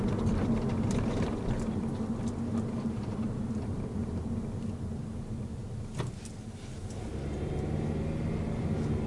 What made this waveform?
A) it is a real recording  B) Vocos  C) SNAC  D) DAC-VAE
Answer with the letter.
A